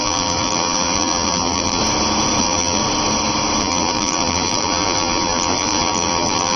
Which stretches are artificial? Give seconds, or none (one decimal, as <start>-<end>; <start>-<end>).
0.0-1.8; 2.4-2.8; 3.6-6.6